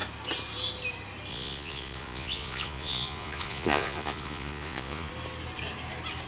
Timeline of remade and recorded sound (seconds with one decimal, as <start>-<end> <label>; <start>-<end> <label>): 0.0-1.3 recorded; 1.3-5.1 remade; 5.1-6.3 recorded